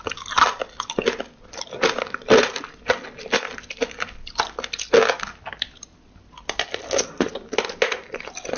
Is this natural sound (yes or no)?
yes